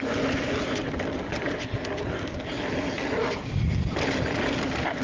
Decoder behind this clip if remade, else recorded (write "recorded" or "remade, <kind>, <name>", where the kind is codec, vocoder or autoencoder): recorded